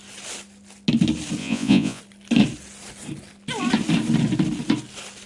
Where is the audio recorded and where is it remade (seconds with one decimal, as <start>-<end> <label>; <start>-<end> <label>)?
0.0-1.4 recorded; 1.4-2.0 remade; 2.0-5.3 recorded